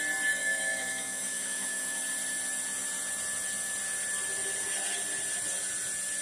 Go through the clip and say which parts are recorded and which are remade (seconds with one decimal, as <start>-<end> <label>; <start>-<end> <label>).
0.0-0.4 recorded; 0.4-2.0 remade; 2.0-6.2 recorded